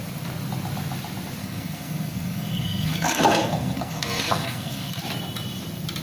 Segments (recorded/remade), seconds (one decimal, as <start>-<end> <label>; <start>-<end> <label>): 0.0-1.4 recorded; 1.4-5.0 remade; 5.0-6.0 recorded